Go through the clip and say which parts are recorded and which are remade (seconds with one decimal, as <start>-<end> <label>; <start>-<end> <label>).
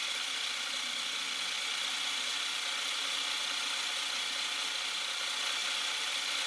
0.0-6.5 recorded